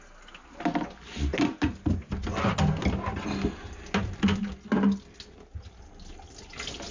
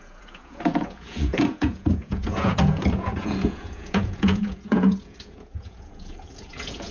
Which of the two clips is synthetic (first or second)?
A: second